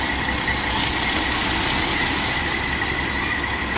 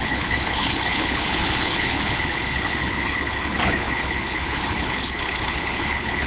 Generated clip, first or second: second